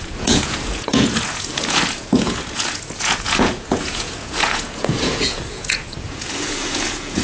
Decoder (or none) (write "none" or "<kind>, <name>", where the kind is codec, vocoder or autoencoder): vocoder, Vocos